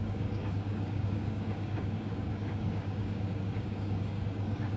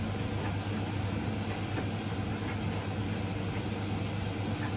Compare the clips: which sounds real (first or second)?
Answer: second